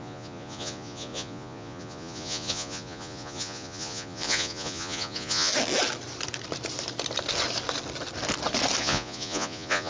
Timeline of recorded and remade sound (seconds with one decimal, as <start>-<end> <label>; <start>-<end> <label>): 0.0-5.5 remade; 5.5-8.8 recorded; 8.8-9.9 remade